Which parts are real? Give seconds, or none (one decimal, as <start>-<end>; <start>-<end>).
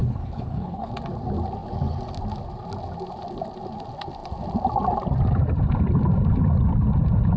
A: 0.9-7.4